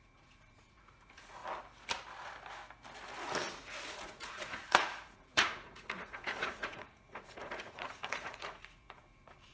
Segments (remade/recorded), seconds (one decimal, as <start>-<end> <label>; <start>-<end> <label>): 0.0-1.4 remade; 1.4-3.9 recorded; 3.9-9.5 remade